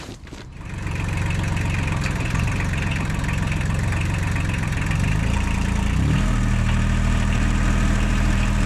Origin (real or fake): fake